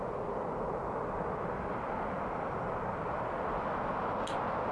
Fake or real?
real